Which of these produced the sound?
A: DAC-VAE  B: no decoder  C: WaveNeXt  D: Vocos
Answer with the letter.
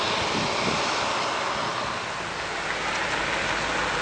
B